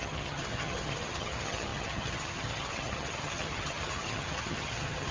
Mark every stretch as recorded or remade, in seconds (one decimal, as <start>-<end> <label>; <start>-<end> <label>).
0.0-5.1 remade